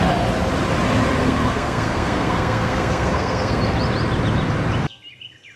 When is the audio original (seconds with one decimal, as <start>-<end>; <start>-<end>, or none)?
0.0-1.2; 3.6-5.6